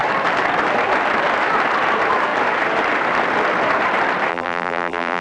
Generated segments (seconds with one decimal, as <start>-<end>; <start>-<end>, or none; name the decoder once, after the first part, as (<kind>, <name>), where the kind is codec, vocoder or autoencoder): 4.3-5.2 (vocoder, BigVGAN v2)